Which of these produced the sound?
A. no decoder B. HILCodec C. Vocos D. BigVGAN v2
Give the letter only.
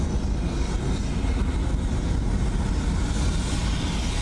A